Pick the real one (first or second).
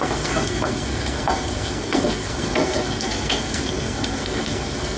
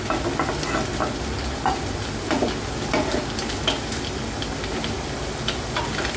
second